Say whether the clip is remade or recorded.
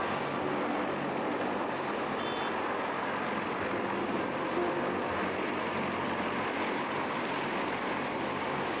recorded